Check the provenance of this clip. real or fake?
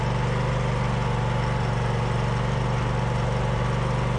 real